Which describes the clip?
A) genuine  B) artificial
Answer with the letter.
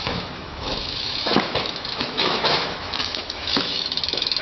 B